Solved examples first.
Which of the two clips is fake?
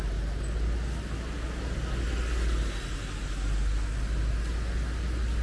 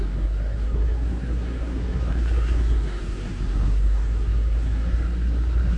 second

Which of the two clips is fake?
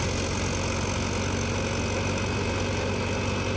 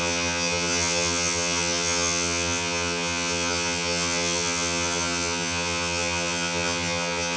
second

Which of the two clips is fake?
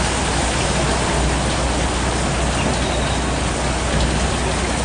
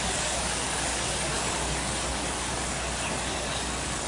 second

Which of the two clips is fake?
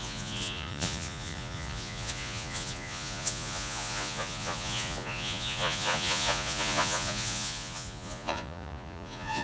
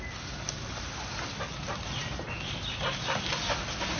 first